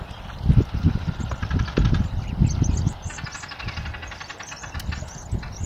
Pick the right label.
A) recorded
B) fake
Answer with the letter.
A